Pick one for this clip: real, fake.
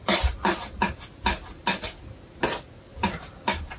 real